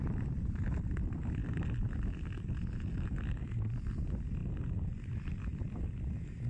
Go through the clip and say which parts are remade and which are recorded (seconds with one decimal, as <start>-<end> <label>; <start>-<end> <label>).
0.0-6.5 recorded